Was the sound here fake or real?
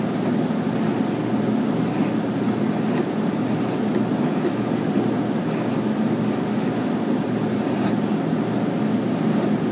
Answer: real